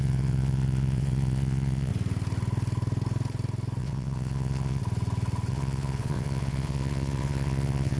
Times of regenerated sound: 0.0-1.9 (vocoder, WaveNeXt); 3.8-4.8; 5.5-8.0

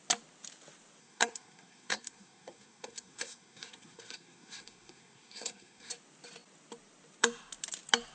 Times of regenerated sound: 1.0-5.9 (codec, SNAC)

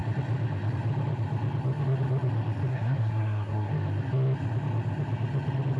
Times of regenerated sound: 2.7-3.7 (codec, SNAC)

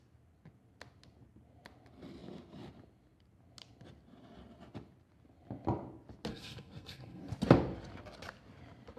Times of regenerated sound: 6.3-7.2 (codec, SNAC)

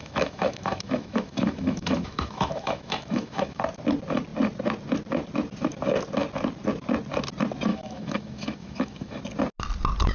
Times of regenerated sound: 0.0-3.6 (autoencoder, DAC-VAE); 7.7-9.2

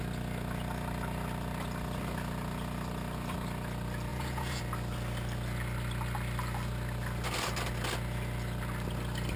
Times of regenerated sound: 4.1-4.6 (vocoder, Vocos)